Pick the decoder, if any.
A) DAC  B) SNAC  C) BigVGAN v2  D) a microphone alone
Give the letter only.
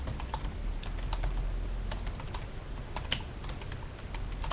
D